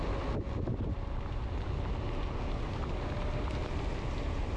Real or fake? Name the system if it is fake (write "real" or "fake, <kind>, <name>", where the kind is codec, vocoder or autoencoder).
real